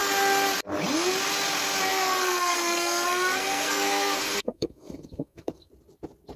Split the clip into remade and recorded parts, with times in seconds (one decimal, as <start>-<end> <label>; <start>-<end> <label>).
0.0-1.9 recorded; 1.9-5.7 remade; 5.7-6.4 recorded